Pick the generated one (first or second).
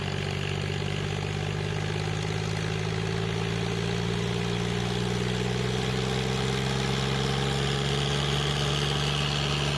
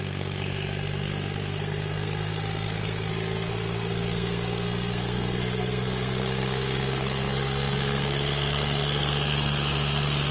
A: second